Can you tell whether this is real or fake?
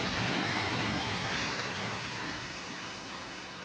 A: fake